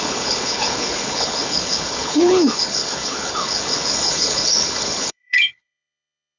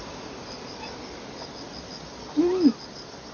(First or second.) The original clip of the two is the second